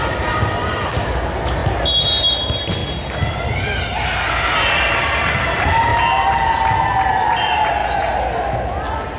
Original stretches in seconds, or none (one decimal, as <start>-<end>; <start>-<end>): 0.0-9.2